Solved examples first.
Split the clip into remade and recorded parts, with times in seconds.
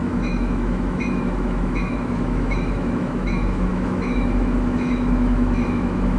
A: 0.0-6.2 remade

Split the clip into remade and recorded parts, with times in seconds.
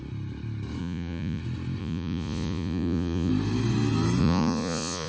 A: 0.0-0.8 recorded; 0.8-1.4 remade; 1.4-1.8 recorded; 1.8-3.3 remade; 3.3-4.2 recorded; 4.2-5.1 remade